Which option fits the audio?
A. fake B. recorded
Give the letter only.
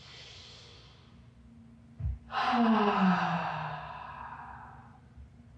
B